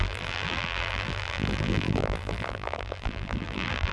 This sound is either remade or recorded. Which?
remade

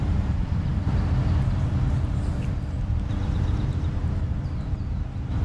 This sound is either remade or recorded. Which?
remade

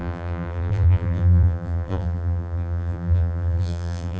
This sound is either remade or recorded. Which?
remade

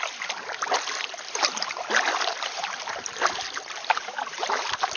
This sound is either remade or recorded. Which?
recorded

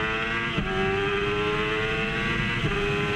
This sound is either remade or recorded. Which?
recorded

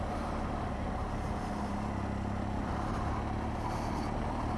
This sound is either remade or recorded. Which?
recorded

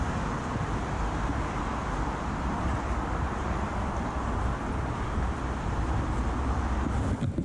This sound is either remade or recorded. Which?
recorded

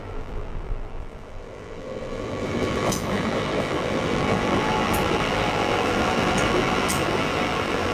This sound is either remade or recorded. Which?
remade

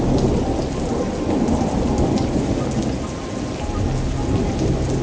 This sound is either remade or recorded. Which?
recorded